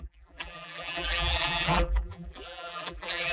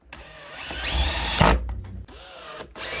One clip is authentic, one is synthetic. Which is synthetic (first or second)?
first